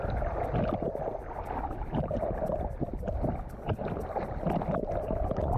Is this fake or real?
real